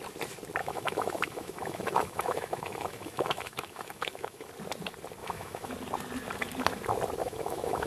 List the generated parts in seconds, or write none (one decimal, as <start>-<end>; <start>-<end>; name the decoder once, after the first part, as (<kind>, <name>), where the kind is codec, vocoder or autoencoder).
0.6-4.5 (autoencoder, DAC-VAE); 5.2-5.7; 7.2-7.9